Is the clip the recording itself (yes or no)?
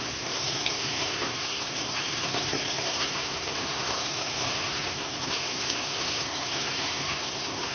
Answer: no